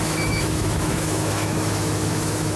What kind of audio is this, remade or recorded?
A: remade